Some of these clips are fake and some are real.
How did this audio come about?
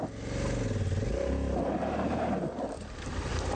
real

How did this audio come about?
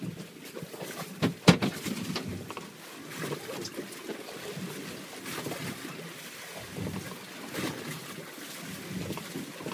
real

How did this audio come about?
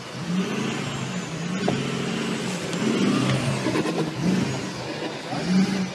real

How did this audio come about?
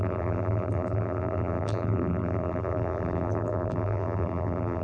fake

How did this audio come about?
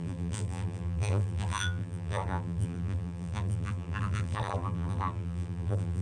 fake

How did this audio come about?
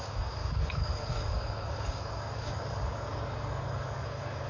fake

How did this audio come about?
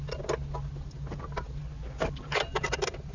real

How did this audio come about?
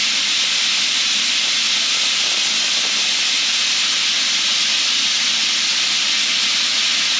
real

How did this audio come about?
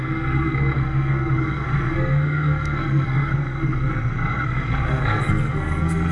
fake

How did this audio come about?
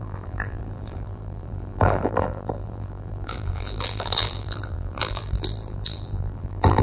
fake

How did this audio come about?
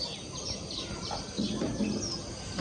real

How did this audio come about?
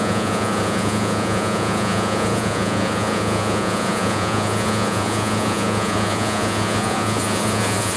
fake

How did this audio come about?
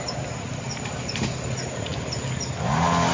real